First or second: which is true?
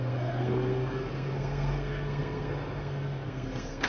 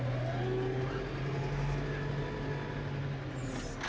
second